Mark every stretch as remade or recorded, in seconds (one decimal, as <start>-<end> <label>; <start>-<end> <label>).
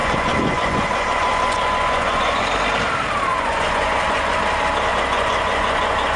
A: 0.0-2.4 remade; 2.4-3.3 recorded; 3.3-4.4 remade; 4.4-4.9 recorded; 4.9-6.2 remade